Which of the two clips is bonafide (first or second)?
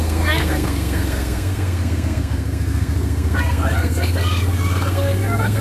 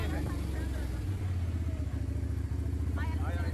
second